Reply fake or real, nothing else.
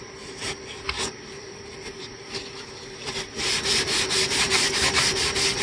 fake